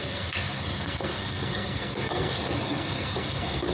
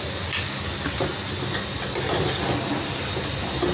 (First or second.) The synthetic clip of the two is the first